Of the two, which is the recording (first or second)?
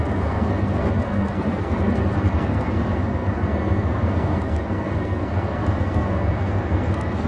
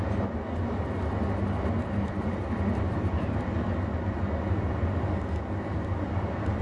second